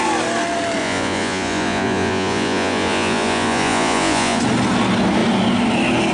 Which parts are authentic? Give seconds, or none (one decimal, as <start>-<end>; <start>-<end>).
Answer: 0.0-0.8; 4.4-6.1